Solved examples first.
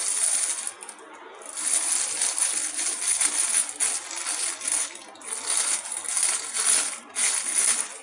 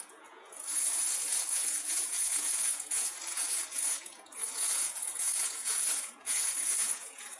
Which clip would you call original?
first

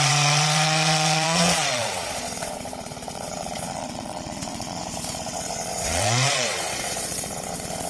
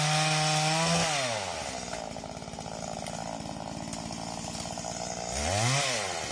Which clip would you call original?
second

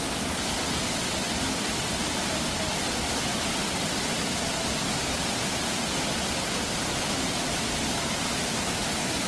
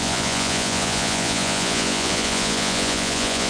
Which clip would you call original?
first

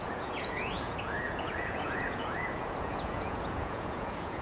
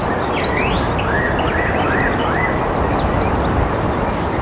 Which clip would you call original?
second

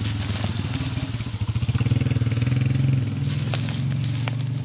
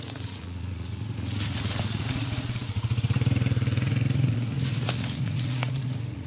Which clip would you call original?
first